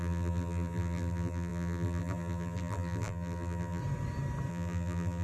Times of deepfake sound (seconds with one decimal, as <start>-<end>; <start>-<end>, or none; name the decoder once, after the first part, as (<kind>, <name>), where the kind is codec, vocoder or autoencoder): 0.0-3.8 (vocoder, BigVGAN v2); 4.5-5.2